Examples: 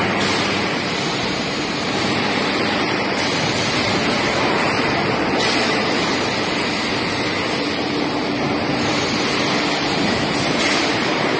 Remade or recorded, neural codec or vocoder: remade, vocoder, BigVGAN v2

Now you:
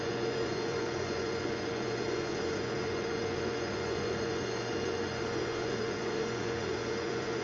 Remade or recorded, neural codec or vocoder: remade, vocoder, Vocos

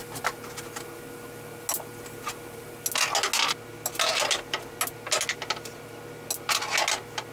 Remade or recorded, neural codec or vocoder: recorded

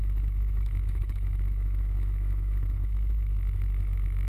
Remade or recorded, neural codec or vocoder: remade, autoencoder, DAC-VAE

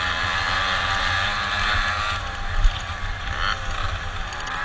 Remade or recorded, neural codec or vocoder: recorded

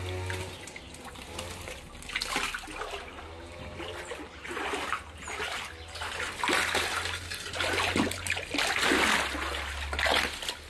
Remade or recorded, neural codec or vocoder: recorded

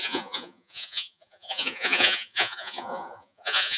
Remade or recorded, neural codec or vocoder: remade, vocoder, Vocos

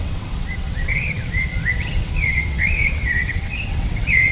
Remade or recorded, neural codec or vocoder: remade, vocoder, WaveNeXt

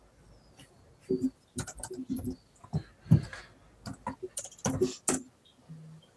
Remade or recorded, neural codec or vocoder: recorded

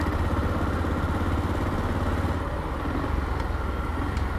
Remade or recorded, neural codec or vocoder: recorded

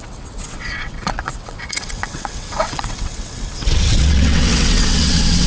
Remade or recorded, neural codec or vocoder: remade, vocoder, WaveNeXt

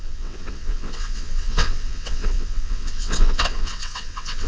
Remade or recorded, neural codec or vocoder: remade, vocoder, WaveNeXt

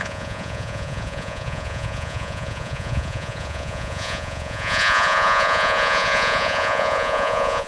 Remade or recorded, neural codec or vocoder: remade, vocoder, Vocos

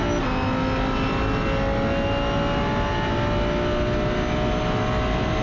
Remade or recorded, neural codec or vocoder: recorded